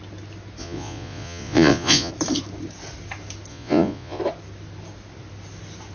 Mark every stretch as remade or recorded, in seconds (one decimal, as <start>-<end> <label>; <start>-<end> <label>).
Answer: 0.0-0.6 recorded; 0.6-2.1 remade; 2.1-3.5 recorded; 3.5-4.2 remade; 4.2-5.9 recorded